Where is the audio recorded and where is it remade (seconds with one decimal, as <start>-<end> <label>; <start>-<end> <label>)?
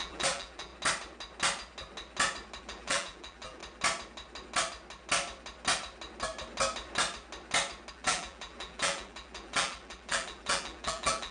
0.0-0.7 remade; 0.7-2.6 recorded; 2.6-3.6 remade; 3.6-7.9 recorded; 7.9-11.3 remade